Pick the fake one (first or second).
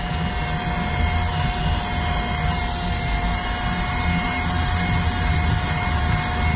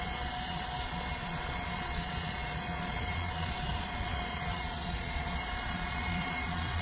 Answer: second